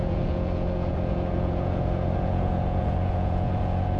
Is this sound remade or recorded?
remade